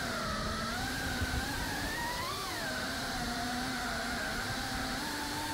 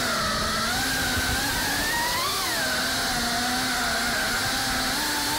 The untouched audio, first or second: second